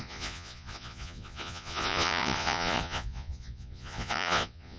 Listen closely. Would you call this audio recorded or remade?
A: remade